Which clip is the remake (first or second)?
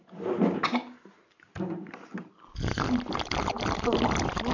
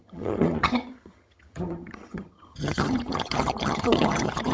second